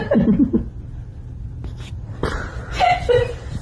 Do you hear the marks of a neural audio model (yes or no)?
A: no